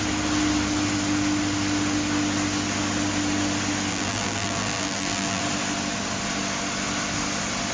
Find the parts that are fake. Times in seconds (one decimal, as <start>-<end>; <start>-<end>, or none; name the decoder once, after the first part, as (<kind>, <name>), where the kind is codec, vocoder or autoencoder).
3.9-5.4 (vocoder, BigVGAN v2)